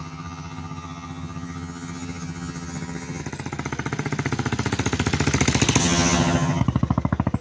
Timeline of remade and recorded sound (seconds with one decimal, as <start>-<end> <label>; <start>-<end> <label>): 0.0-3.2 remade; 3.2-5.8 recorded; 5.8-6.6 remade; 6.6-7.4 recorded